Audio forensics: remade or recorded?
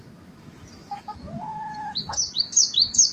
remade